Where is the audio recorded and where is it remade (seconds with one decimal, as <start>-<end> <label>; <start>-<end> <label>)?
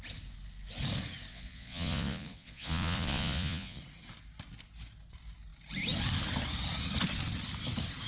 0.0-1.3 recorded; 1.3-3.8 remade; 3.8-8.1 recorded